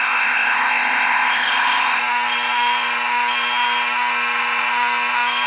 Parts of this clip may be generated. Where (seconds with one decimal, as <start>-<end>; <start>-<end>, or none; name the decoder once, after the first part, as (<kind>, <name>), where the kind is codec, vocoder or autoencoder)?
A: 0.0-2.0 (codec, ZipCodec)